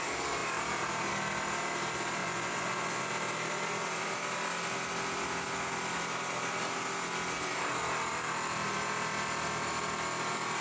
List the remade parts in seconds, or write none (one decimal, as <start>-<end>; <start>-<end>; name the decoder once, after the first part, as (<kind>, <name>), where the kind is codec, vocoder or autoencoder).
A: 2.2-3.1 (vocoder, Vocos)